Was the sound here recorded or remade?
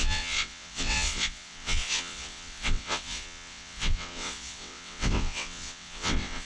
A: remade